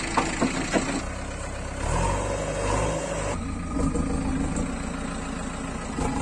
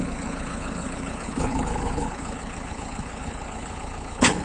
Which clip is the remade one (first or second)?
second